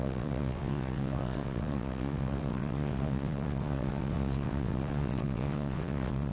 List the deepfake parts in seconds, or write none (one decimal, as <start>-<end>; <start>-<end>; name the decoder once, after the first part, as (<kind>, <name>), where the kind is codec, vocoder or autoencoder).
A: 0.0-6.3 (vocoder, WaveNeXt)

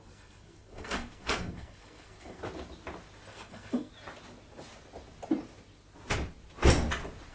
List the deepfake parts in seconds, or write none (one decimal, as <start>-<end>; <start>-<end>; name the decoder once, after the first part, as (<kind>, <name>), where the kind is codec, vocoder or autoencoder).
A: 0.0-2.4 (codec, SNAC); 3.3-3.9

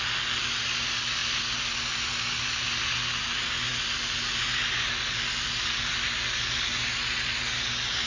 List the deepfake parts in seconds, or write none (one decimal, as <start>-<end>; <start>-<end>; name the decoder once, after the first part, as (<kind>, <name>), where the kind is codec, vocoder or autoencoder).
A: none

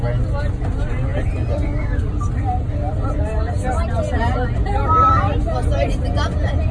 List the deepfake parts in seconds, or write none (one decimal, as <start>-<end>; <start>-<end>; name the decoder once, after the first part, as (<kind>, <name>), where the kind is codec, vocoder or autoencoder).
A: none

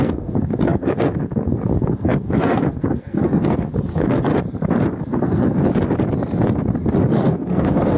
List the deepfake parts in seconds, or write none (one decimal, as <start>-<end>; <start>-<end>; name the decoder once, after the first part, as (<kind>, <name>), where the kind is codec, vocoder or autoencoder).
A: 0.0-4.3 (codec, SNAC); 5.0-5.7; 7.1-8.0

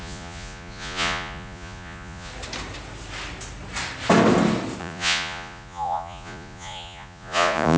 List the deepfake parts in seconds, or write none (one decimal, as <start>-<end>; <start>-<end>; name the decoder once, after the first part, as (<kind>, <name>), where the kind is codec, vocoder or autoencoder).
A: 0.0-2.3 (vocoder, Vocos); 4.8-7.8

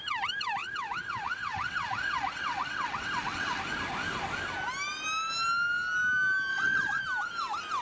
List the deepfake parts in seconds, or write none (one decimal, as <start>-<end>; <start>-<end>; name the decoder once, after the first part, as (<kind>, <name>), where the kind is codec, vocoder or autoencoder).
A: 0.6-3.6 (vocoder, WaveNeXt); 6.5-7.0